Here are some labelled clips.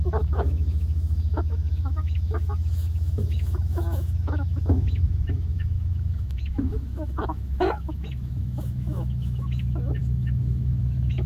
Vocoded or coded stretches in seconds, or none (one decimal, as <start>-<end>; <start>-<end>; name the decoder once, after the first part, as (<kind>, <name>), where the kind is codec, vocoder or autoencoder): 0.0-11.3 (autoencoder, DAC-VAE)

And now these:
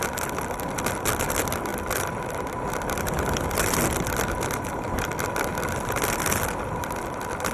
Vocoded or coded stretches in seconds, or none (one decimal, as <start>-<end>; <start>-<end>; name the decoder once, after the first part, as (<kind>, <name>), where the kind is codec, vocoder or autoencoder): none

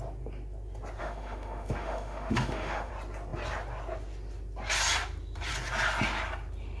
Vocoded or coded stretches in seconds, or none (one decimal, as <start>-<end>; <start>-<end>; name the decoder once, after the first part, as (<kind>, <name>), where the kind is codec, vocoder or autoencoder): 1.0-2.9 (autoencoder, DAC-VAE)

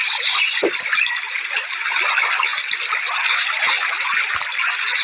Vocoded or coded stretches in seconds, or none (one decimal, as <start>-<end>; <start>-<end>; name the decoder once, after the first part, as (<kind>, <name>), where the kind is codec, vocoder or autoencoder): none

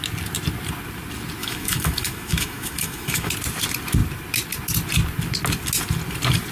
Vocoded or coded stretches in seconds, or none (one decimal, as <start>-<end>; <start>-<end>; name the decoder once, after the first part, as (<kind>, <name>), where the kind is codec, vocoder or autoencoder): 1.4-3.3 (autoencoder, DAC-VAE)

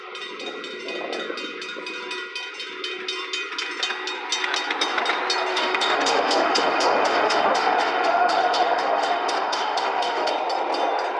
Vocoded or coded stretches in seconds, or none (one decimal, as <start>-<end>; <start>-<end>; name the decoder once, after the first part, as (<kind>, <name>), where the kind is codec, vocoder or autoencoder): 5.5-10.3 (autoencoder, DAC-VAE)